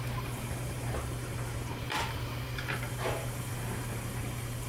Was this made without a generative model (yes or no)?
no